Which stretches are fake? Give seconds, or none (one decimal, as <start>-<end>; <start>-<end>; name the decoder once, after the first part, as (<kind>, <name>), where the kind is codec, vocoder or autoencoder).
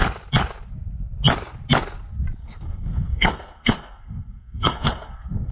2.4-5.5 (codec, SNAC)